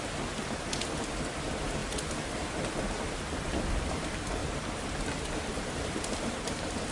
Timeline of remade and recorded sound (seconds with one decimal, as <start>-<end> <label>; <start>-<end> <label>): 0.0-1.8 remade; 1.8-3.9 recorded; 3.9-4.4 remade; 4.4-5.5 recorded; 5.5-6.9 remade